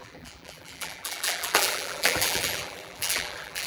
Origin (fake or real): fake